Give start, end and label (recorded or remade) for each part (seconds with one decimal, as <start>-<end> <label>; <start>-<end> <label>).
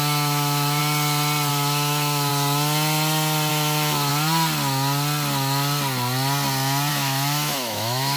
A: 0.0-0.8 remade; 0.8-1.5 recorded; 1.5-2.3 remade; 2.3-3.5 recorded; 3.5-4.1 remade; 4.1-6.9 recorded; 6.9-8.2 remade